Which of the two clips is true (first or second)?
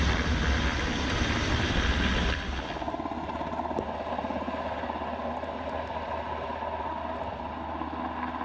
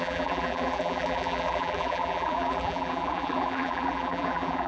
first